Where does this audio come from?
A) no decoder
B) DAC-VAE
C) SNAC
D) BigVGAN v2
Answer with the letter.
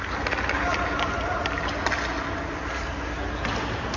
A